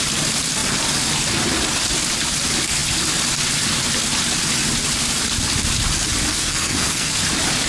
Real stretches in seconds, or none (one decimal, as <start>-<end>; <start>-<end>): 0.0-6.3; 7.1-7.7